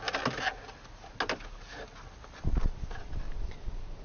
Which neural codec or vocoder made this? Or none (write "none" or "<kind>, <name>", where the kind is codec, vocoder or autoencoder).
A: none